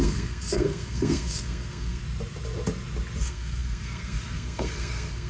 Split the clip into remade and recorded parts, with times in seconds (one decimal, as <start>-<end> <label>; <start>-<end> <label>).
0.0-2.0 remade; 2.0-3.2 recorded; 3.2-5.3 remade